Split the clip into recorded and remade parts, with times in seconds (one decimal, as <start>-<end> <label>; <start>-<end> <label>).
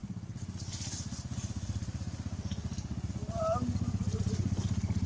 0.0-5.1 recorded